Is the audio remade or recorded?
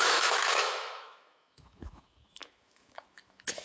remade